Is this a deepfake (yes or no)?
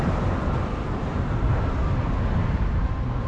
no